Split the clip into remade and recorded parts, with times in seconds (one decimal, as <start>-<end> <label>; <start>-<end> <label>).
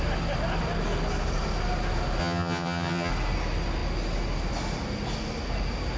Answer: 0.0-2.2 recorded; 2.2-3.1 remade; 3.1-6.0 recorded